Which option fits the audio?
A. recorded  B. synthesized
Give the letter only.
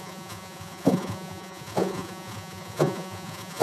B